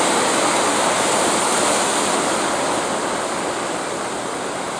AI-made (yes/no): no